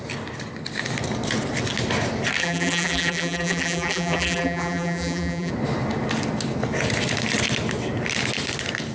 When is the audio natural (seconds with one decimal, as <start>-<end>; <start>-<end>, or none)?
0.0-2.4; 5.5-8.9